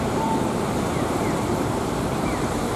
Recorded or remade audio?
remade